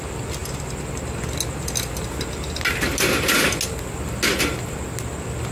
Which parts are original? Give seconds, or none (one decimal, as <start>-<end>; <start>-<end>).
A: 0.0-5.5